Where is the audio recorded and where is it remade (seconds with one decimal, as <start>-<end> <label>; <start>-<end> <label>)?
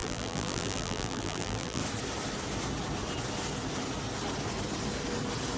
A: 0.0-1.8 remade; 1.8-5.6 recorded